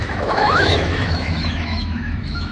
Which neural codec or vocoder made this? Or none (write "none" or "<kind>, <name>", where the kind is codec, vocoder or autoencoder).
autoencoder, DAC-VAE